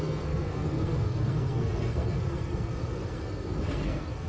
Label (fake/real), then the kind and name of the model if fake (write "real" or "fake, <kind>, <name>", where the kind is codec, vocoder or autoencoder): fake, codec, SNAC